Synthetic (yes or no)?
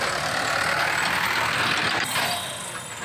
no